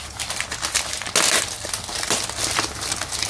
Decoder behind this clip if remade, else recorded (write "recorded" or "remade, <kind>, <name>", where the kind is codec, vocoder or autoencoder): recorded